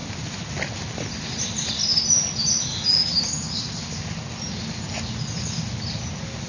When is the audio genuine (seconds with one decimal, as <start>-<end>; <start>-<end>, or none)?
0.0-6.5